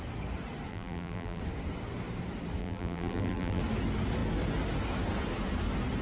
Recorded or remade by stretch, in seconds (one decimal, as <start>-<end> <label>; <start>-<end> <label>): 0.0-0.7 recorded; 0.7-1.4 remade; 1.4-2.6 recorded; 2.6-3.6 remade; 3.6-6.0 recorded